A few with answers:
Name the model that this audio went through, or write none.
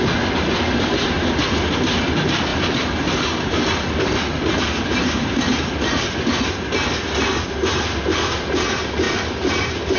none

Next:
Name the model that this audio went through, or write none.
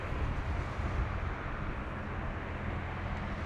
none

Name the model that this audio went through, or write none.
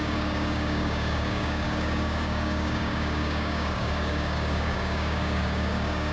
codec, DAC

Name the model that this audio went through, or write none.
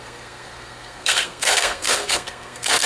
codec, SNAC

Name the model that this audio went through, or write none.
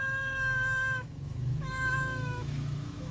autoencoder, DAC-VAE